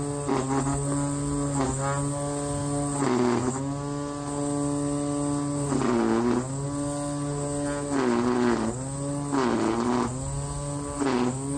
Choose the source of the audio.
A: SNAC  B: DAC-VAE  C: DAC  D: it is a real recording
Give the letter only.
D